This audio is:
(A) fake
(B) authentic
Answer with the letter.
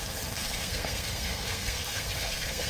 A